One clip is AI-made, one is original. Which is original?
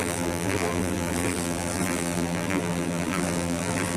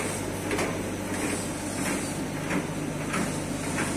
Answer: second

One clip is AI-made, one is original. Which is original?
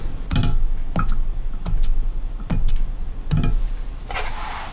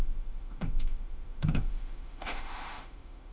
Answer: first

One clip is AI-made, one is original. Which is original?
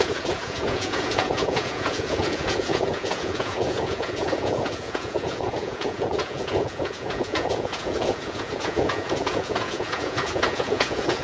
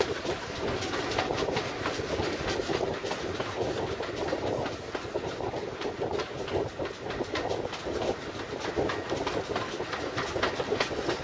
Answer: second